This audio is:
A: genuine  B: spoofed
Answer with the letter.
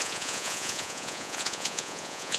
B